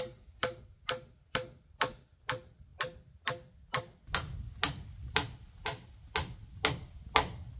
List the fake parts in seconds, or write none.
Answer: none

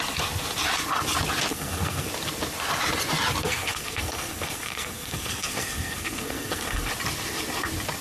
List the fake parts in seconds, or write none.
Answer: 1.5-2.1; 3.4-6.9